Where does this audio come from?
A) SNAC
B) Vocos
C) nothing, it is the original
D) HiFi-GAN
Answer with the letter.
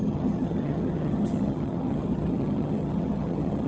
D